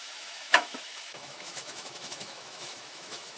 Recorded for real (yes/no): no